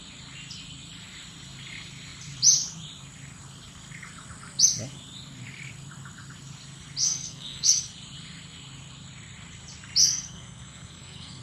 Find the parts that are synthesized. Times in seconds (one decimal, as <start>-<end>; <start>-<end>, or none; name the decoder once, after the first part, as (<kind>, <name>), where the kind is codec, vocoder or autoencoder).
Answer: 7.0-7.8 (codec, SNAC); 10.0-11.4

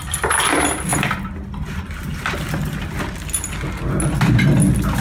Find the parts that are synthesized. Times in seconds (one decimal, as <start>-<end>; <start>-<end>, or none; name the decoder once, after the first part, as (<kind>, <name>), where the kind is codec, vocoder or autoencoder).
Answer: none

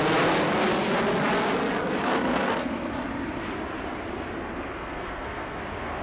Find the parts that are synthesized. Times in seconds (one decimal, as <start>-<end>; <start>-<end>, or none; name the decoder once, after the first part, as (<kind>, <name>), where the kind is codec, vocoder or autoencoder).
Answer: 2.0-2.7 (codec, SNAC); 4.8-5.6

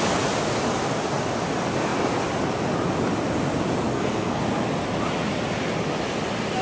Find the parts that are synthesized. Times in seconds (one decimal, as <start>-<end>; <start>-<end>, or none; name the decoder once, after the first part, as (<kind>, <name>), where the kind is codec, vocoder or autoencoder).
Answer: 3.9-4.4 (codec, SNAC)

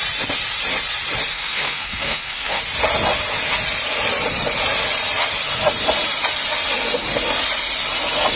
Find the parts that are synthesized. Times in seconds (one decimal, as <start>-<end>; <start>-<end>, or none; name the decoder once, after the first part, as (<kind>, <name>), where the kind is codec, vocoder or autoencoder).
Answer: 1.3-2.6 (codec, SNAC)

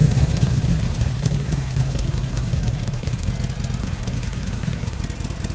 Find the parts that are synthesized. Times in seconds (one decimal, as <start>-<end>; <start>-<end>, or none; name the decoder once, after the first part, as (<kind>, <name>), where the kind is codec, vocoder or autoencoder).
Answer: 0.0-3.3 (codec, SNAC); 3.8-5.0

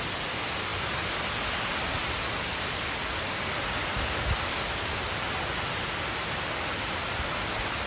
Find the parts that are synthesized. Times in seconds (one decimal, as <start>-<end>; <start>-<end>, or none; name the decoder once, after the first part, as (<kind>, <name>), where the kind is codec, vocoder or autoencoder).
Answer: none